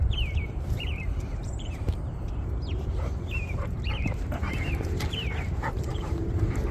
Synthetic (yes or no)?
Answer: yes